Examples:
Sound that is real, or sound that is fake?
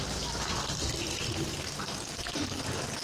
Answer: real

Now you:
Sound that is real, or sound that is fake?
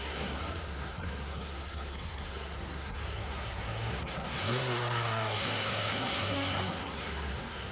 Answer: fake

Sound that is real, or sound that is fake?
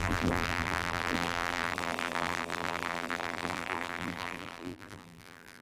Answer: fake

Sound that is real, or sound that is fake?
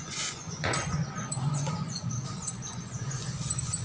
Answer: fake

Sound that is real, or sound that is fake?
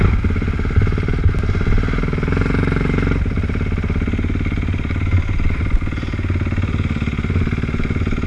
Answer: real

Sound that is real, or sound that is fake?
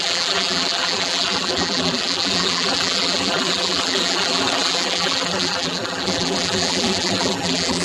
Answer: fake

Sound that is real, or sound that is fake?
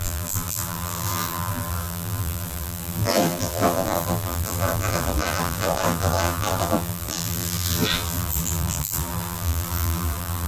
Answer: fake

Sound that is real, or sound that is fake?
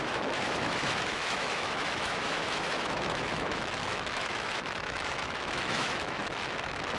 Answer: fake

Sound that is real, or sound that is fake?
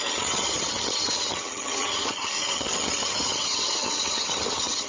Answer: fake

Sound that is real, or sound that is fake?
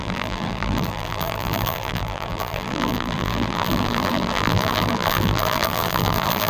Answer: fake